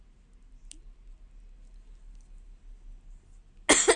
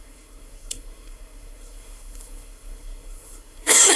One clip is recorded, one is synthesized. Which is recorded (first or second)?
first